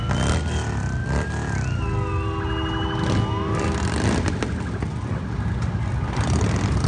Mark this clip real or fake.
real